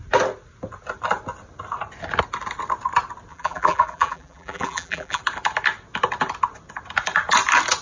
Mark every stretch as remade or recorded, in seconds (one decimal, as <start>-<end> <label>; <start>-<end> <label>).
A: 0.0-3.3 recorded; 3.3-5.2 remade; 5.2-7.8 recorded